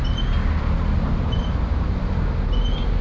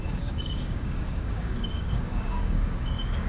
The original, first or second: first